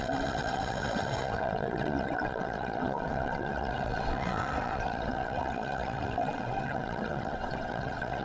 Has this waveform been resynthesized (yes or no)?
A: yes